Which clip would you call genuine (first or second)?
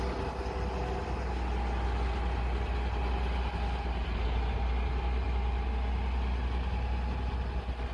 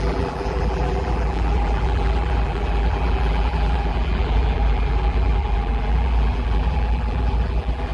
first